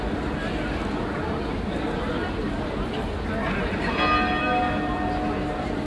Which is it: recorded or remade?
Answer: recorded